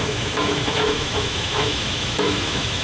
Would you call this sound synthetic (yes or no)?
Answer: yes